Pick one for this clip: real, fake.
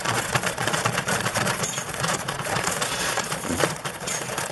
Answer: fake